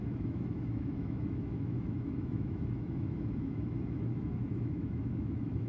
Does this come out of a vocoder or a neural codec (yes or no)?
yes